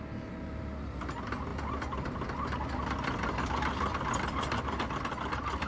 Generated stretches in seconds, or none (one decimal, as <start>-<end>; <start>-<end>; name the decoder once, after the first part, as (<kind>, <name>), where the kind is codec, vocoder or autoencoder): none